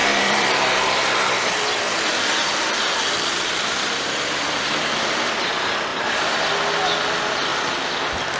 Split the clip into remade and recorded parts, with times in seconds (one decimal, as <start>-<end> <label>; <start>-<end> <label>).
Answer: 0.0-1.0 remade; 1.0-2.5 recorded; 2.5-4.6 remade; 4.6-5.9 recorded; 5.9-6.4 remade; 6.4-8.4 recorded